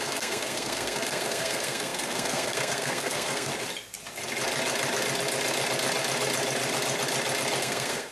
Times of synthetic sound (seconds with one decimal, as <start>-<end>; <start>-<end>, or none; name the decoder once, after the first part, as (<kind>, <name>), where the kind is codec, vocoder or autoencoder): 0.0-3.5 (codec, SNAC); 7.6-8.1